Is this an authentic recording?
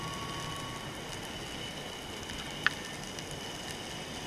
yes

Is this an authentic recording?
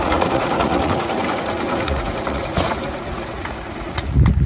no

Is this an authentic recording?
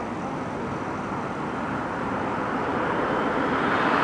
yes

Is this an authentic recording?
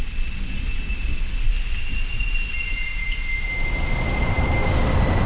yes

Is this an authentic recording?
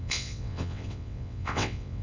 no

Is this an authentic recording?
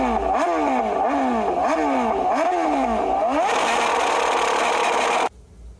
yes